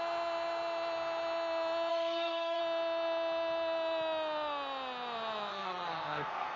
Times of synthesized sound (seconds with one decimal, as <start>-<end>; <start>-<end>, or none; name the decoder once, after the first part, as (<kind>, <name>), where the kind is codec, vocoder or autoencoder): 1.9-2.6 (codec, SNAC); 5.5-6.6